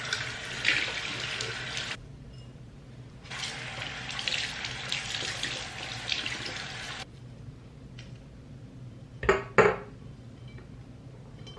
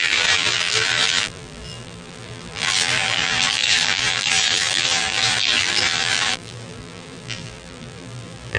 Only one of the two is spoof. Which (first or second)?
second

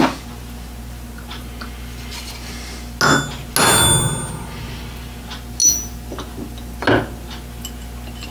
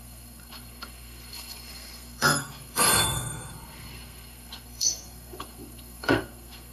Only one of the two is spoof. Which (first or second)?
second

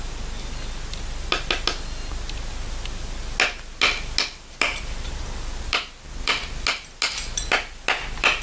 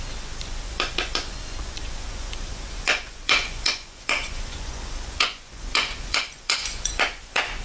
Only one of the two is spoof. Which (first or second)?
second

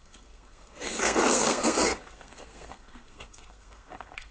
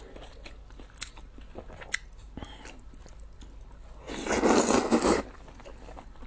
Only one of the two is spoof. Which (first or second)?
first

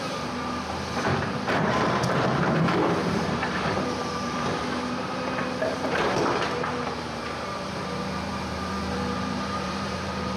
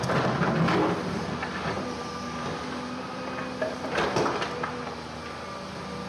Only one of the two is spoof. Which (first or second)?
first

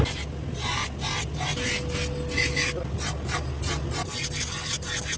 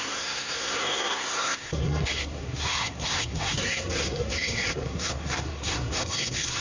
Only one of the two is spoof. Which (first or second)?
second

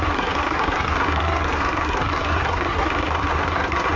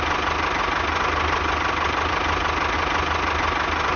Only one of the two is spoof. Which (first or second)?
first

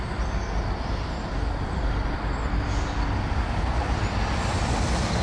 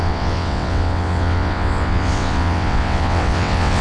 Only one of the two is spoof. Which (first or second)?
second